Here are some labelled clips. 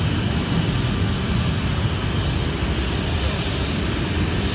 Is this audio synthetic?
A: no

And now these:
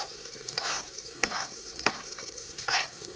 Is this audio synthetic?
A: yes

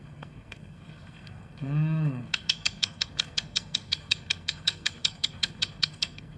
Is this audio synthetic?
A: yes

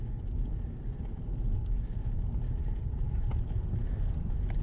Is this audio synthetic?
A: no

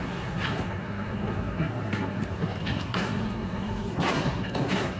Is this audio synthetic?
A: yes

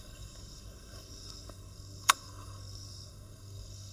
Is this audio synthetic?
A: yes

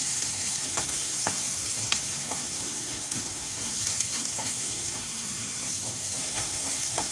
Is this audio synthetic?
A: yes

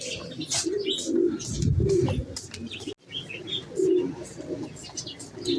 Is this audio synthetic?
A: no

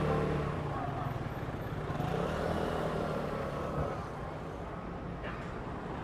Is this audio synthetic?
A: no